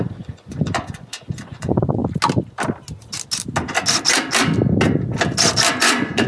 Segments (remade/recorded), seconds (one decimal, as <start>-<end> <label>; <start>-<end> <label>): 0.0-2.0 remade; 2.0-5.7 recorded; 5.7-6.3 remade